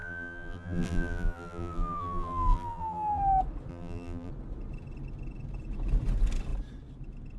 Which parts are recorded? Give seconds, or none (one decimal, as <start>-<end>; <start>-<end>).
3.2-3.7; 4.3-7.4